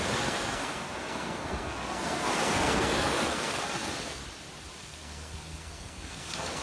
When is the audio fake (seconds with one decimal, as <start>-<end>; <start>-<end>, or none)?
0.0-4.2; 4.8-6.6